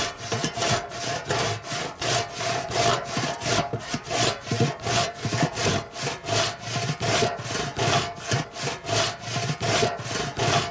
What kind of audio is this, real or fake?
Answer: real